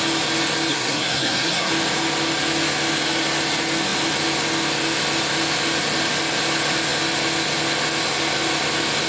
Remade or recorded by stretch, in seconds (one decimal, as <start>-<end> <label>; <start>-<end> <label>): 0.0-0.7 recorded; 0.7-1.7 remade; 1.7-9.1 recorded